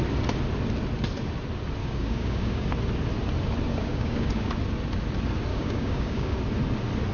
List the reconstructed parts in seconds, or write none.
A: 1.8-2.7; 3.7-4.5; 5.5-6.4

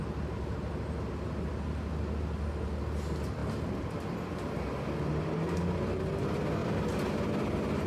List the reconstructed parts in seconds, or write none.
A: none

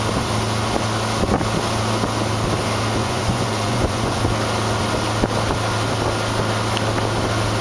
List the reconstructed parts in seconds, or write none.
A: 3.0-4.2

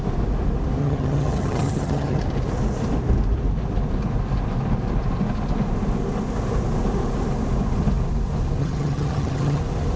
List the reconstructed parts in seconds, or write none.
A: 0.8-2.2; 8.6-9.6

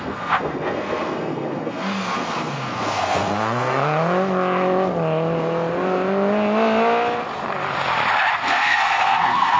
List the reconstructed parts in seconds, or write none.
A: 0.0-3.8; 8.3-9.6